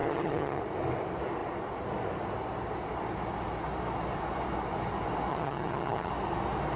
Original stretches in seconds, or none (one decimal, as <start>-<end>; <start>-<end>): 0.6-5.3; 6.1-6.8